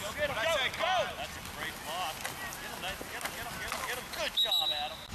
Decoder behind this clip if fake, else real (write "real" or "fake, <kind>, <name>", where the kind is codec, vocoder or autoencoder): real